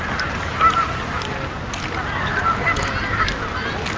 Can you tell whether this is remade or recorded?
recorded